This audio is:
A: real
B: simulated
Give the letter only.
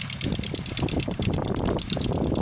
A